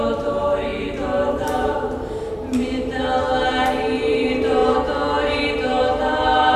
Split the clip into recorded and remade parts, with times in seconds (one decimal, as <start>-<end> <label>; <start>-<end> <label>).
0.0-6.6 remade